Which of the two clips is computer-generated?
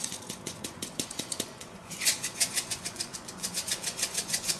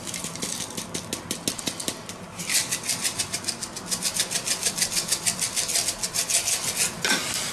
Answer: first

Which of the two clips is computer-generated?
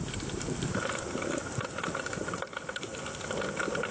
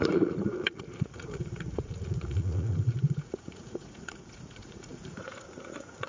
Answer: second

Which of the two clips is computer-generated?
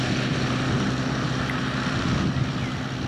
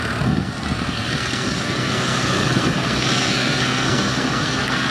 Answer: second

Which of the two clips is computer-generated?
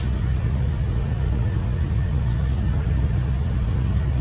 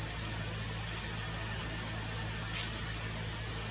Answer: first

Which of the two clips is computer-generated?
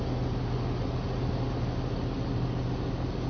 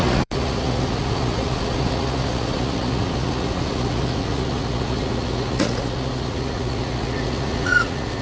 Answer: second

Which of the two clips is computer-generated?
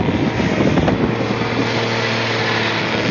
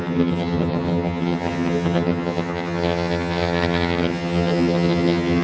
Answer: second